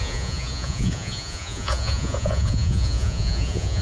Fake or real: fake